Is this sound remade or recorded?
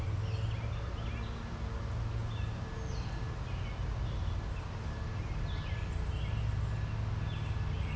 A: recorded